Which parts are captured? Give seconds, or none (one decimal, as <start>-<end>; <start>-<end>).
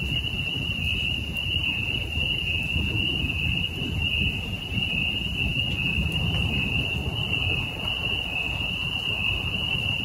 0.0-10.0